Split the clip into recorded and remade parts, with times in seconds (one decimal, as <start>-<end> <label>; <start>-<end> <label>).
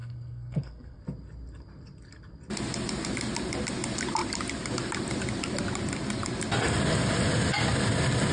0.0-1.0 remade; 1.0-8.3 recorded